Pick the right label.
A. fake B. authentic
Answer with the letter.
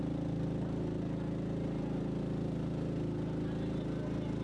B